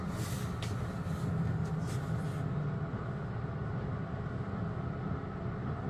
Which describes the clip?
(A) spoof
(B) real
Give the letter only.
B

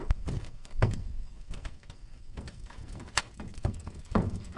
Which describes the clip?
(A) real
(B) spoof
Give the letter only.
B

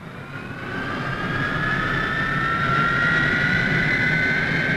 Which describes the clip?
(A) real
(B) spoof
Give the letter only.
A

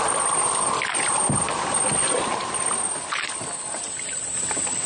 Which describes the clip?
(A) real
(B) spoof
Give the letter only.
A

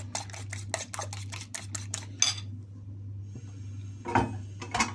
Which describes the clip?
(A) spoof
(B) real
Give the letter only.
B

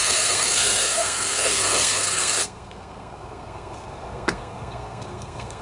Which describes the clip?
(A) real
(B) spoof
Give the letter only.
B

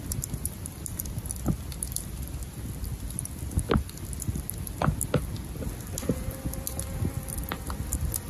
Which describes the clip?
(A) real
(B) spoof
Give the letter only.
A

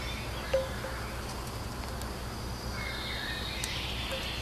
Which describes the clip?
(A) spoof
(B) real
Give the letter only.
B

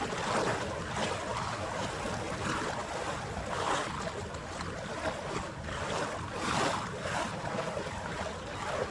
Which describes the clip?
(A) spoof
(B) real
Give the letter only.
B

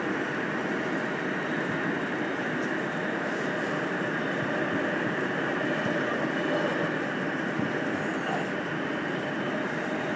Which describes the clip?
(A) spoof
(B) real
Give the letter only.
B